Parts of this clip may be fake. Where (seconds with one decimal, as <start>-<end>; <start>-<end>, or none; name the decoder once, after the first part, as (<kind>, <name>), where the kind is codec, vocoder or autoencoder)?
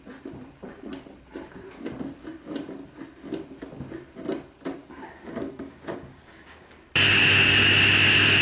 4.8-6.7 (codec, DAC)